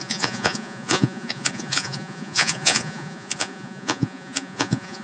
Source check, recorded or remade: remade